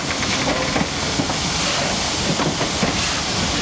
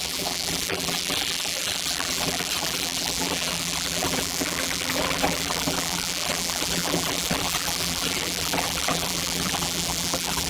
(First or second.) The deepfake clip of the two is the second